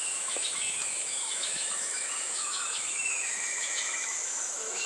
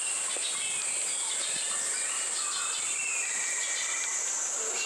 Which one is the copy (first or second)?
first